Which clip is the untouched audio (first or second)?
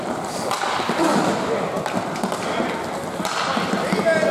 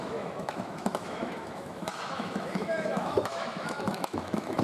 first